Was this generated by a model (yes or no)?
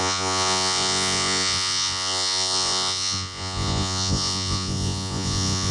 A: yes